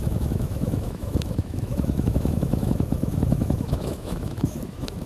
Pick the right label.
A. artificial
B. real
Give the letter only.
A